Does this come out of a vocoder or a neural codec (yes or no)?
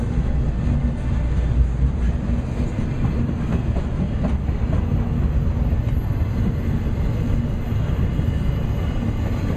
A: no